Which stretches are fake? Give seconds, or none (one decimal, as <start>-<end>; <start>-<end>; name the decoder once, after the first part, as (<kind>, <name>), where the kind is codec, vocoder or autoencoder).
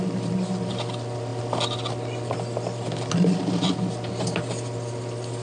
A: none